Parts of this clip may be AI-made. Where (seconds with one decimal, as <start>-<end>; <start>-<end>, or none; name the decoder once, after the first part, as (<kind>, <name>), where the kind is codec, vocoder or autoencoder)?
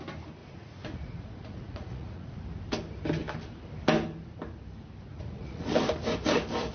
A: 0.4-2.4 (vocoder, Vocos); 5.1-5.7